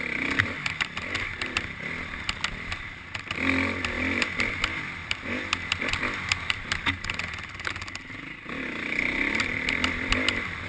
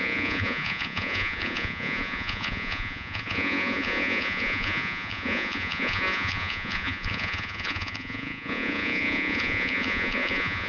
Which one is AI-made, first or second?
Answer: second